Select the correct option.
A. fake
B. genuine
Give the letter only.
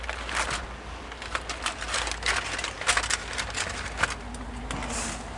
B